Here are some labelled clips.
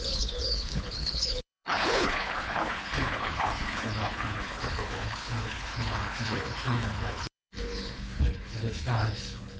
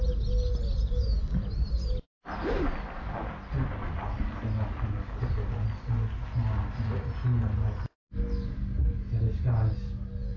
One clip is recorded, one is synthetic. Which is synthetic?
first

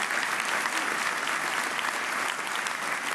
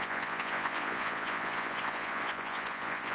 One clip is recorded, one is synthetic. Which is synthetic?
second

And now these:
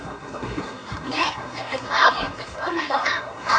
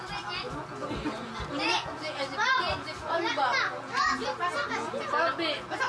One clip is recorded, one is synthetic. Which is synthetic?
first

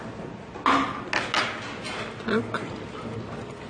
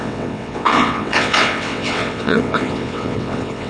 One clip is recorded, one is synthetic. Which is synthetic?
second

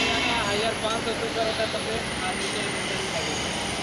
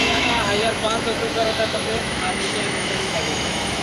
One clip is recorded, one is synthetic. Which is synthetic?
second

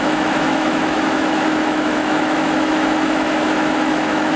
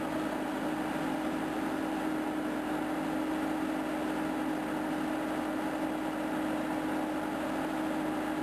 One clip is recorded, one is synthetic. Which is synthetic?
first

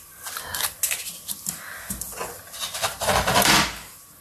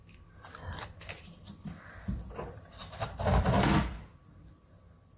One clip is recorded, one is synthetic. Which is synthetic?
second